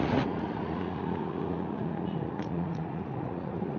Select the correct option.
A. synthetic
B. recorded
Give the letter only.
A